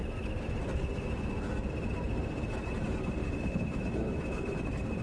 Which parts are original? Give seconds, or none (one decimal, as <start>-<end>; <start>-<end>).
0.0-3.2; 4.2-5.0